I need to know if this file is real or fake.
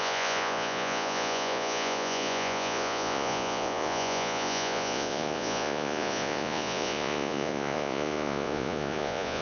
fake